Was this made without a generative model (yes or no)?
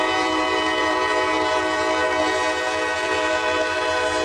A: no